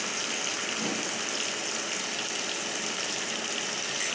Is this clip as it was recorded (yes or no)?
yes